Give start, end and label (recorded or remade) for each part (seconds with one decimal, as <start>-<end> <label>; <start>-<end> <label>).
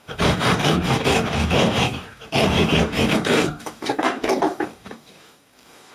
0.0-5.9 remade